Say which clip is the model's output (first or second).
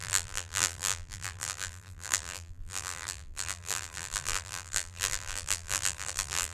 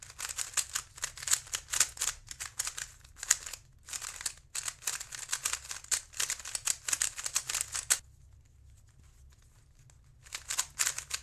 first